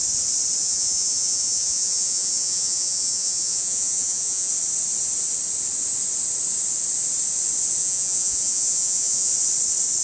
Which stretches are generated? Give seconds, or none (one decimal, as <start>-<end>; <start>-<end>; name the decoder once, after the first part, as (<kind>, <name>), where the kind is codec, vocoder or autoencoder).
0.6-4.5 (vocoder, Vocos); 7.8-9.3